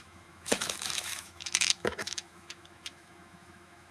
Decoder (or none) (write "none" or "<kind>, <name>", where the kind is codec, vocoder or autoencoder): autoencoder, DAC-VAE